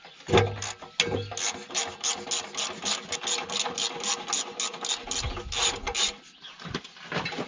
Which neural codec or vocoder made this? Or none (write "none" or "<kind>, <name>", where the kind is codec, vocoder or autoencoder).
none